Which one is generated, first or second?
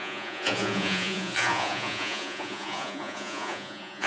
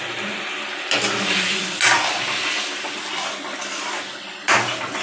first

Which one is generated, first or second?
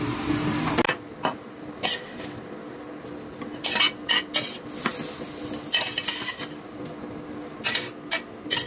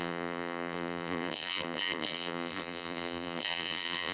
second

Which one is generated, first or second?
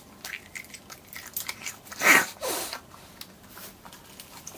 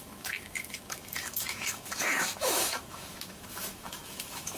second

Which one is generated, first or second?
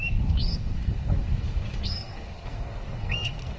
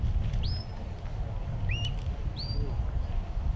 first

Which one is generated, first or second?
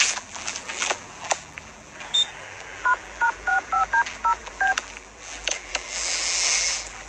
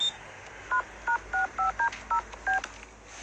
first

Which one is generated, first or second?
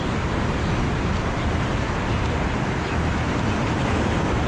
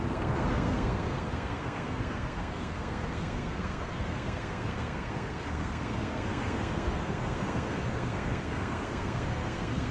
second